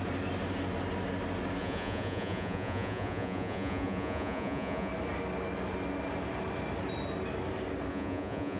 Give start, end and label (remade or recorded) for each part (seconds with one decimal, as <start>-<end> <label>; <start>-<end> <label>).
0.0-1.6 recorded; 1.6-4.9 remade; 4.9-7.9 recorded; 7.9-8.6 remade

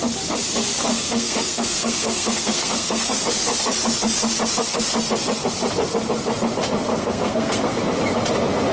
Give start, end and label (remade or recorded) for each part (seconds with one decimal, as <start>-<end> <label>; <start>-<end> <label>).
0.0-0.9 recorded; 0.9-3.2 remade; 3.2-6.9 recorded; 6.9-7.8 remade; 7.8-8.7 recorded

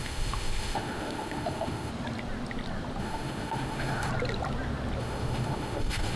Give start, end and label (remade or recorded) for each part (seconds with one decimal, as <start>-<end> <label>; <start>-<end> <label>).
0.0-1.9 remade; 1.9-3.0 recorded; 3.0-4.1 remade; 4.1-5.0 recorded; 5.0-6.2 remade

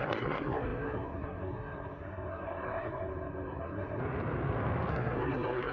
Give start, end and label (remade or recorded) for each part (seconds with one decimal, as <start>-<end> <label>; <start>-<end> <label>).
0.0-4.0 remade; 4.0-4.9 recorded; 4.9-5.7 remade

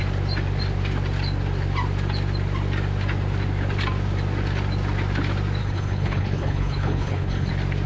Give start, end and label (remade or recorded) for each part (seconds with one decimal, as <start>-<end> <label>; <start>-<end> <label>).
0.0-5.6 recorded; 5.6-7.5 remade; 7.5-7.9 recorded